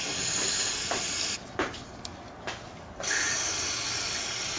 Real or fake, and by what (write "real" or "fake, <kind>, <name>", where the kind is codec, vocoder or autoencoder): real